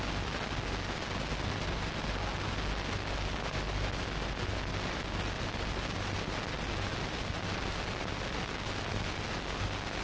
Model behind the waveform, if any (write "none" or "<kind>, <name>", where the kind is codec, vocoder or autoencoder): none